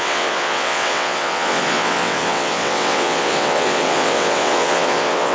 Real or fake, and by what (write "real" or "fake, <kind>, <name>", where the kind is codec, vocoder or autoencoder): fake, vocoder, WaveNeXt